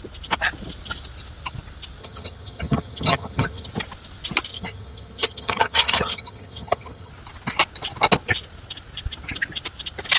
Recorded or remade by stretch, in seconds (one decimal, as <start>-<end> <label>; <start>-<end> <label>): 0.0-2.0 recorded; 2.0-3.7 remade; 3.7-4.5 recorded; 4.5-7.1 remade; 7.1-10.2 recorded